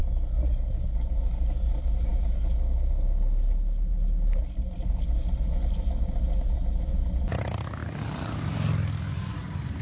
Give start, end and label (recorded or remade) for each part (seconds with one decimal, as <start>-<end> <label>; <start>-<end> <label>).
0.0-9.8 recorded